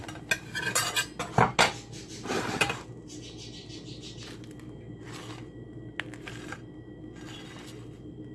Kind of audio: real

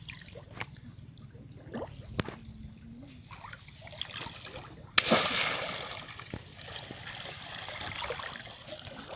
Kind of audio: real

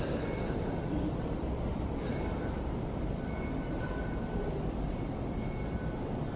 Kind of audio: real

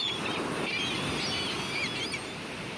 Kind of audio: real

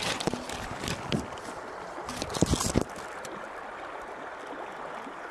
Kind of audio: real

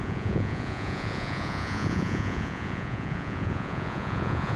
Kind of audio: fake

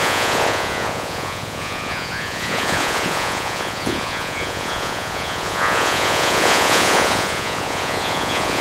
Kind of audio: fake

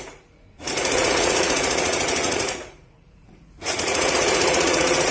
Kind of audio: fake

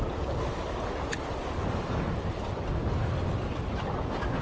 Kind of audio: real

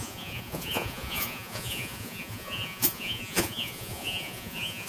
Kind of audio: fake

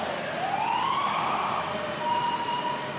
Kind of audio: real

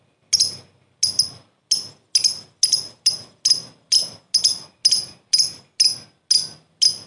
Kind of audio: real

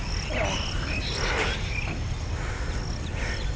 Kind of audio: real